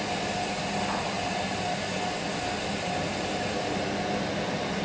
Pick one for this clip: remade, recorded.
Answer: recorded